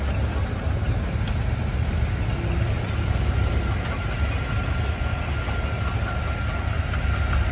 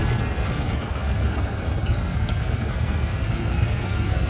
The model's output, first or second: second